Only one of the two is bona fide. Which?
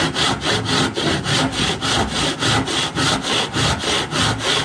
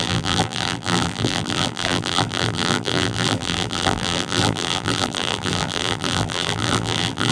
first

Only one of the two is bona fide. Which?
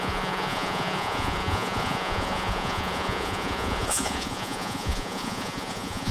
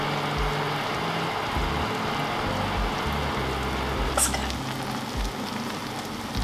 second